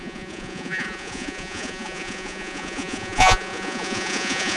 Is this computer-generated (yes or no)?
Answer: yes